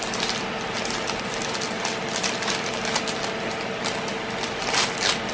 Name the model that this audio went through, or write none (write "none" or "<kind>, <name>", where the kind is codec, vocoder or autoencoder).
none